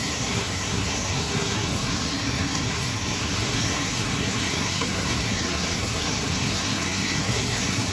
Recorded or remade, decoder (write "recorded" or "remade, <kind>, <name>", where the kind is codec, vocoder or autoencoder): remade, codec, SNAC